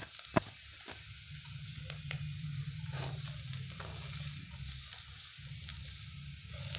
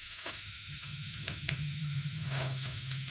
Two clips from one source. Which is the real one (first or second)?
first